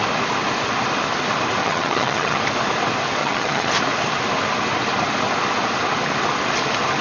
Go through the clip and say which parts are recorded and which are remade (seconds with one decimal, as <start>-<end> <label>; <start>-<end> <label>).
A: 0.0-1.6 recorded; 1.6-2.4 remade; 2.4-3.2 recorded; 3.2-3.7 remade; 3.7-7.0 recorded